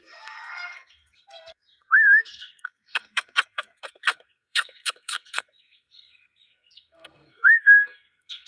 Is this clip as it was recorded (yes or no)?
no